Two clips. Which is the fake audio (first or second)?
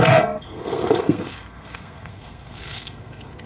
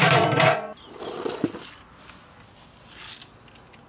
first